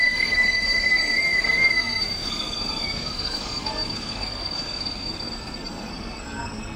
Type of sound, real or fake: fake